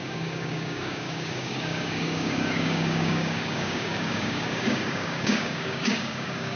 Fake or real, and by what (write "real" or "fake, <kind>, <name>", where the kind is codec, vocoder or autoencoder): fake, codec, DAC